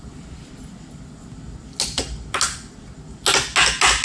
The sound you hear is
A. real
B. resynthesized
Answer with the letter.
A